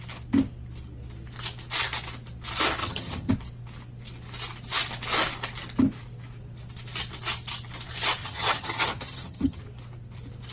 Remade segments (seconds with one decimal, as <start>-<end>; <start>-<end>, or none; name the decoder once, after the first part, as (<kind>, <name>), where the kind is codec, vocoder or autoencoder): 2.8-3.3 (vocoder, HiFi-GAN); 8.2-9.6